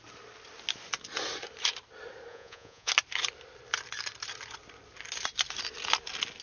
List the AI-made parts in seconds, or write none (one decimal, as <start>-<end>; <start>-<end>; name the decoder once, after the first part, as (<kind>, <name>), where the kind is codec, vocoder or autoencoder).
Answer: 2.3-2.9 (vocoder, Vocos)